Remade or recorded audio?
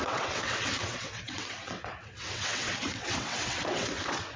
remade